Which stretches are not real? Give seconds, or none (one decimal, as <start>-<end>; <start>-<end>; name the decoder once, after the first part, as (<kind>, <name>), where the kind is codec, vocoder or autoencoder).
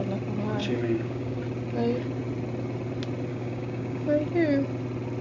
0.6-1.4 (codec, DAC); 3.3-4.2